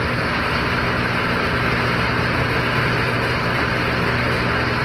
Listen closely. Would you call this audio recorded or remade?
recorded